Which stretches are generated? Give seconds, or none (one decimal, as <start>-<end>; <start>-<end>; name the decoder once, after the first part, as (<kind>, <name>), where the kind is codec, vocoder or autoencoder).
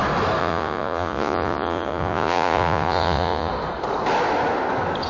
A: 0.4-3.5 (vocoder, Vocos)